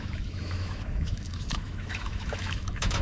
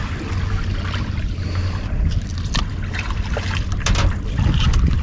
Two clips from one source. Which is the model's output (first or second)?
first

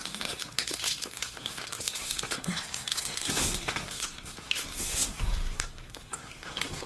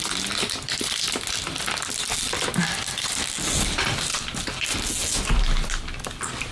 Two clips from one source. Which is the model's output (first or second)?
first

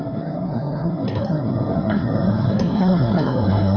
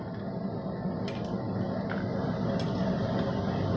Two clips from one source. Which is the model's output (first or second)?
first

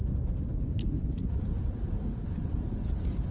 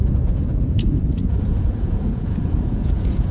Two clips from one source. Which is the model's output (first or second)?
second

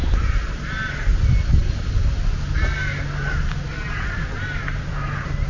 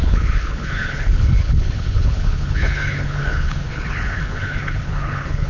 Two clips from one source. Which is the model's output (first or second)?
second